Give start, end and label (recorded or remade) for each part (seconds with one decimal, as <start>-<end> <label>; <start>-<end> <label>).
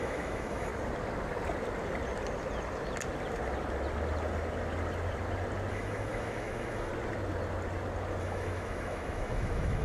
0.0-0.7 remade; 0.7-5.7 recorded; 5.7-6.9 remade; 6.9-8.2 recorded; 8.2-9.8 remade